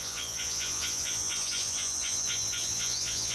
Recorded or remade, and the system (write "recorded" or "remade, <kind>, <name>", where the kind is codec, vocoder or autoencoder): remade, vocoder, Vocos